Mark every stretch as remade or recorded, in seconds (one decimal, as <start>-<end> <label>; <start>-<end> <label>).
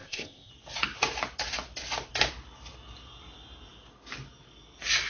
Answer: 0.0-0.5 remade; 0.5-5.1 recorded